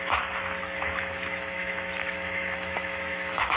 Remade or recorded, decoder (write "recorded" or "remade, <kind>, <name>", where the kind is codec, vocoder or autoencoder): remade, autoencoder, DAC-VAE